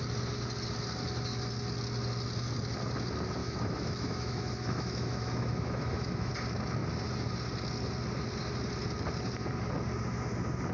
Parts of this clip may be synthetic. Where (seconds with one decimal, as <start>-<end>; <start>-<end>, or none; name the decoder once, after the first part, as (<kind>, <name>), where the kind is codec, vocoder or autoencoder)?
3.4-6.3 (autoencoder, DAC-VAE)